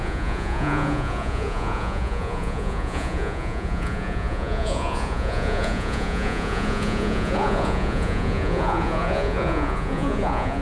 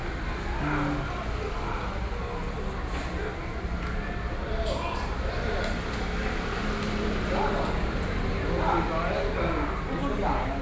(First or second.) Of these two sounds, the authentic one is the second